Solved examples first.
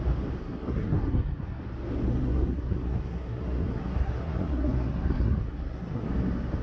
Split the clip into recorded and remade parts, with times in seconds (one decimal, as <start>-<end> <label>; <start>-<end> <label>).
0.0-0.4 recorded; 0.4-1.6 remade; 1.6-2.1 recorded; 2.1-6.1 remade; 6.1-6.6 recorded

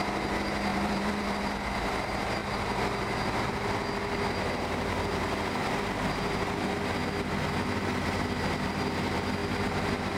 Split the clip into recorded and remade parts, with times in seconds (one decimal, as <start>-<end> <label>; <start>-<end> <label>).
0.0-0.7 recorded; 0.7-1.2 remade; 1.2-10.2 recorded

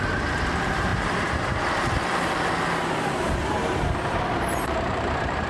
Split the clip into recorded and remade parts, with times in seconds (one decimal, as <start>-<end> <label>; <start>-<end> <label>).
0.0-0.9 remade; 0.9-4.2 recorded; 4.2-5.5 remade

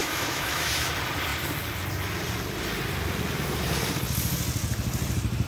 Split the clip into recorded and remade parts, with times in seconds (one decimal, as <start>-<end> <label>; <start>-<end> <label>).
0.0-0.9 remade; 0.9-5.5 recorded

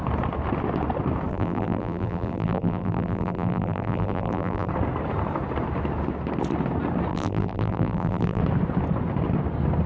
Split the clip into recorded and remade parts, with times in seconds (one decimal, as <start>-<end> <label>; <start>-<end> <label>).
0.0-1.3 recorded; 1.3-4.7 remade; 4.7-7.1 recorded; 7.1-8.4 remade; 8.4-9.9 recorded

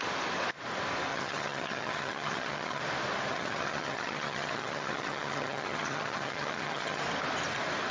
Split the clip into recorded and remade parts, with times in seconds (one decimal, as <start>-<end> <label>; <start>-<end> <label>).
0.0-1.1 recorded; 1.1-2.8 remade; 2.8-3.3 recorded; 3.3-7.0 remade; 7.0-7.9 recorded

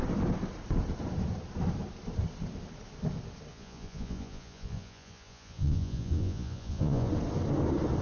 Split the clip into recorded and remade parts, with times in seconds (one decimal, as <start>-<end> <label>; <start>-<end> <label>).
0.0-3.5 recorded; 3.5-7.1 remade; 7.1-8.0 recorded